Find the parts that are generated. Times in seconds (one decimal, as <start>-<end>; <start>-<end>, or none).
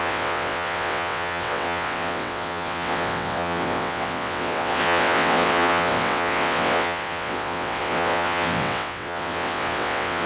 0.0-10.3